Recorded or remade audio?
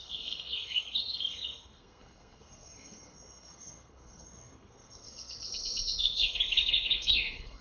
remade